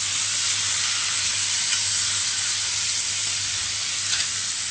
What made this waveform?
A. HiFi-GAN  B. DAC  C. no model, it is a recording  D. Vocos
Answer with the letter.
C